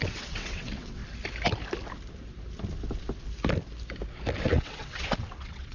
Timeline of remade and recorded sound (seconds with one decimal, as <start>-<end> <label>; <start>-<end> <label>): 0.0-1.0 remade; 1.0-4.4 recorded; 4.4-5.7 remade